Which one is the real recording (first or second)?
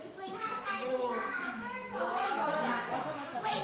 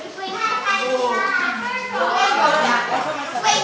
second